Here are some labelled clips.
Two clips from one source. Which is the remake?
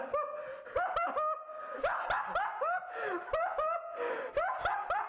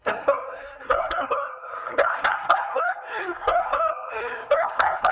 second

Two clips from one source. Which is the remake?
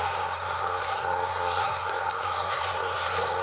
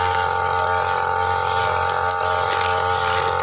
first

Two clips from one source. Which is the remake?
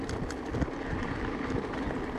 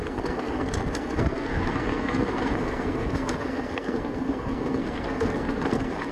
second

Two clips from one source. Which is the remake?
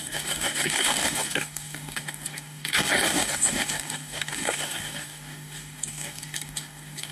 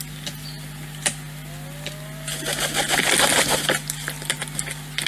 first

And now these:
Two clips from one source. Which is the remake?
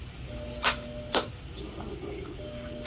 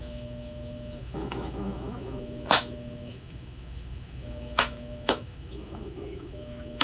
second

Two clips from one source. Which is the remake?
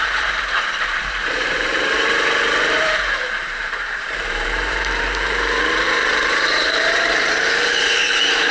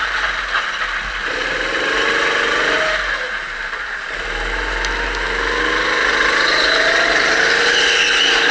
first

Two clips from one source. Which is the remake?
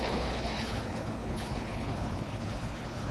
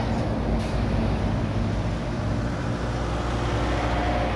first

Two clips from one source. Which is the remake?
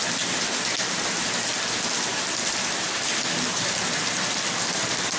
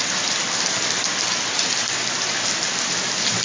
second